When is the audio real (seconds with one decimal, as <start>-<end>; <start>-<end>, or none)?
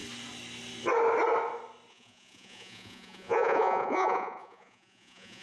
0.0-1.9